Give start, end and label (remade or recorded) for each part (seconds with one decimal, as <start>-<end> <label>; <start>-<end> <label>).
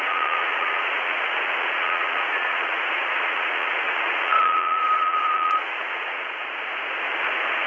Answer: 0.0-7.7 remade